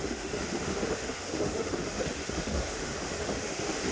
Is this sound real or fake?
fake